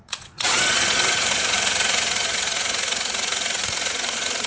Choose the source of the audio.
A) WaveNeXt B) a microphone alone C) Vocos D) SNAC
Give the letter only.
C